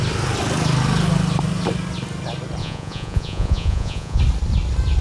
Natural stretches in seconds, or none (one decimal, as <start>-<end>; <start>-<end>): 0.0-2.6; 4.2-5.0